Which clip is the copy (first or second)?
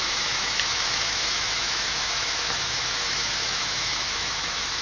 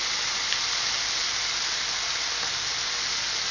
first